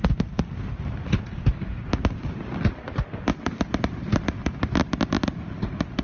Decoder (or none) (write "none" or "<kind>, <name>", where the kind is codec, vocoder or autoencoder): none